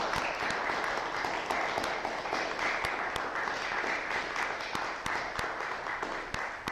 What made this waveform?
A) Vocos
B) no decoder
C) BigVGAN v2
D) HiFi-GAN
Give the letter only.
B